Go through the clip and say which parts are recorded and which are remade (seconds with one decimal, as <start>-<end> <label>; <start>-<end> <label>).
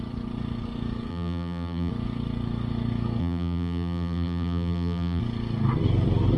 0.0-1.1 recorded; 1.1-1.9 remade; 1.9-3.2 recorded; 3.2-5.2 remade; 5.2-6.4 recorded